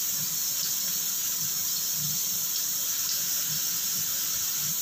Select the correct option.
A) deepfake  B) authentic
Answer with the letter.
B